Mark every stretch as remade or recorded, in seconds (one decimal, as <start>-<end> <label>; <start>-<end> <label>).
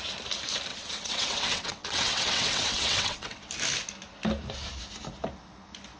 0.0-0.7 recorded; 0.7-3.5 remade; 3.5-6.0 recorded